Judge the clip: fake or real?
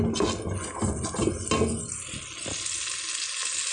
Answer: real